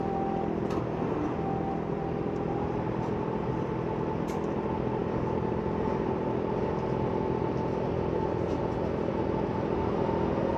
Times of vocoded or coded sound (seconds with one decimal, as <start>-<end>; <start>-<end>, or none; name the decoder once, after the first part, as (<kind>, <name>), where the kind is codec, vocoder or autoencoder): none